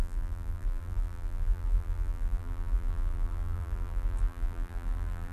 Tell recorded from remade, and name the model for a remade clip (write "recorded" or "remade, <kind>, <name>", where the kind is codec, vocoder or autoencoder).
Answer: remade, vocoder, BigVGAN v2